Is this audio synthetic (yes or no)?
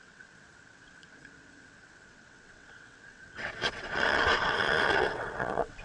yes